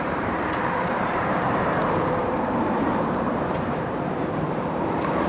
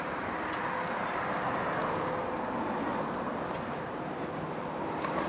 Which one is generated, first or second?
first